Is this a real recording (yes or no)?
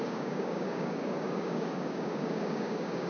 no